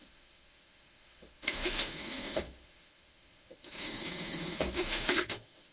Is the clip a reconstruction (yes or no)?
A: yes